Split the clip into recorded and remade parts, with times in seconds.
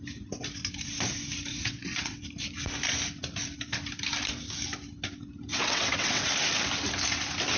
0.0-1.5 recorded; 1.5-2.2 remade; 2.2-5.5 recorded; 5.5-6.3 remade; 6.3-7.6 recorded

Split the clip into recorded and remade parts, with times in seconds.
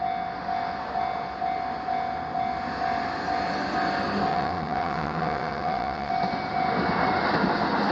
0.0-4.3 recorded; 4.3-6.1 remade; 6.1-7.9 recorded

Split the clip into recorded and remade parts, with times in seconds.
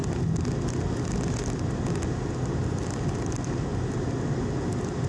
0.0-5.1 recorded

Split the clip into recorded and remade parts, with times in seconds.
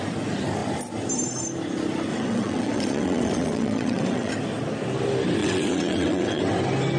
0.0-2.1 recorded; 2.1-4.3 remade; 4.3-5.4 recorded; 5.4-6.4 remade; 6.4-7.0 recorded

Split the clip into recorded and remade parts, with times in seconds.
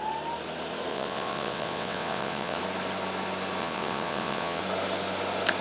0.0-0.9 recorded; 0.9-2.6 remade; 2.6-3.6 recorded; 3.6-4.6 remade; 4.6-5.6 recorded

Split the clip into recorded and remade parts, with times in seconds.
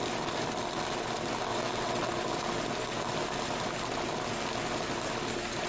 0.0-1.5 recorded; 1.5-2.1 remade; 2.1-5.7 recorded